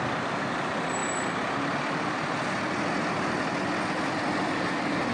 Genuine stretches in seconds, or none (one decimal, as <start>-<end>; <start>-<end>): 0.0-5.1